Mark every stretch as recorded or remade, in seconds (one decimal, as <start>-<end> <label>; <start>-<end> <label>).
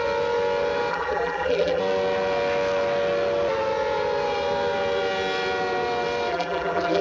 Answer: 0.0-0.9 recorded; 0.9-1.8 remade; 1.8-6.3 recorded; 6.3-7.0 remade